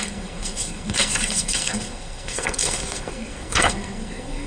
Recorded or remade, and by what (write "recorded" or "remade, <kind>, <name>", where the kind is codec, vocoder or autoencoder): remade, codec, SNAC